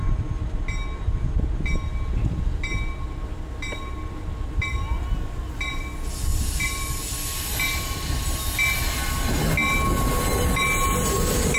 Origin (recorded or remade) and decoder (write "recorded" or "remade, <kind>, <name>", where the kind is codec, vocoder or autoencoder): recorded